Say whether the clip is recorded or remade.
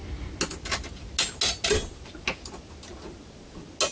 recorded